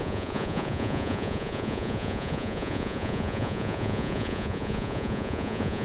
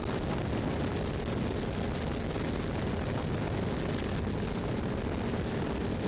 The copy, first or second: first